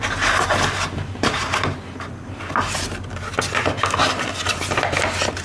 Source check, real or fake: real